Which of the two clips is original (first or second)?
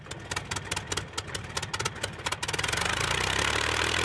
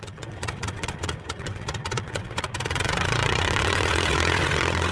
first